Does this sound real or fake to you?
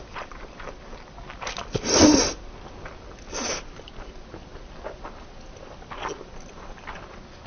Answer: real